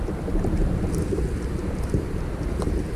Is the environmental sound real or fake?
real